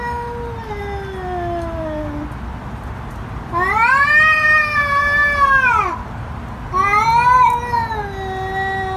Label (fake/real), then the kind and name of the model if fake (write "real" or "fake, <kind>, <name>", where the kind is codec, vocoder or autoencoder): real